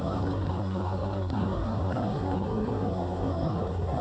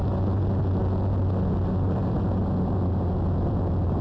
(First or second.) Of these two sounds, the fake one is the first